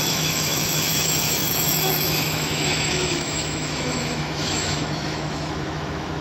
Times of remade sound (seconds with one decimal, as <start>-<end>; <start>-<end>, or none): 0.0-6.2